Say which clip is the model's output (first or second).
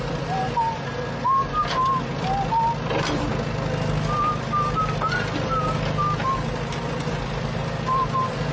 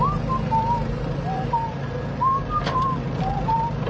second